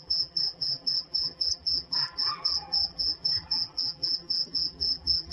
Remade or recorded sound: remade